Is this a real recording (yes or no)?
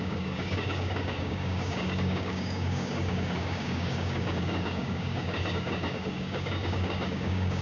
no